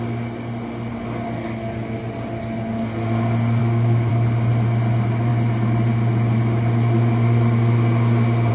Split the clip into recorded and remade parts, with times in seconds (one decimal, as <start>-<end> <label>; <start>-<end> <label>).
0.0-3.6 recorded; 3.6-4.1 remade; 4.1-8.5 recorded